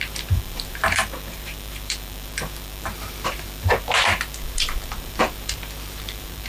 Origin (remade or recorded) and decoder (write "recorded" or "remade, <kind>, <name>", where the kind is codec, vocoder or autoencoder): remade, vocoder, BigVGAN v2